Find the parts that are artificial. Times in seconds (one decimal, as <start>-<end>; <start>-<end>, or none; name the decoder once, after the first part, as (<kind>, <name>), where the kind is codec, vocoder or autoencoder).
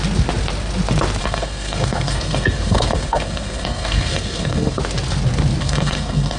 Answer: 1.2-4.8 (codec, SNAC); 5.6-6.4